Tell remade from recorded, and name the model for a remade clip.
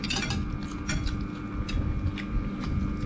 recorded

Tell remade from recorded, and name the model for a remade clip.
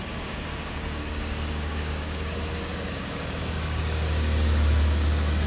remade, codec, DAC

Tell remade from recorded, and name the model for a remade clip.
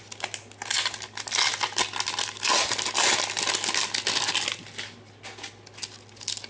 recorded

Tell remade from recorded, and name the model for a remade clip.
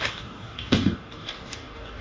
remade, codec, DAC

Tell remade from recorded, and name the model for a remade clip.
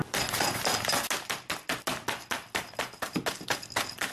recorded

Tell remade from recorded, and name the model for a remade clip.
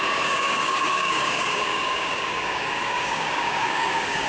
remade, codec, DAC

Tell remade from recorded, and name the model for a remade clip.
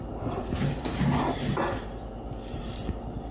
recorded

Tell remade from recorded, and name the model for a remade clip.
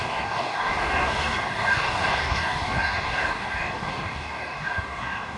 remade, codec, DAC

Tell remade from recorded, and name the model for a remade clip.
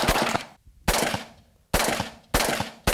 recorded